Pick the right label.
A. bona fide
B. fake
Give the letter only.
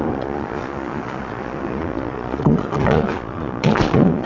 B